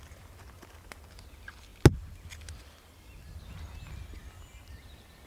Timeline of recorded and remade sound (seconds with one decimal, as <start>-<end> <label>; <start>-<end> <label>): 0.0-5.3 recorded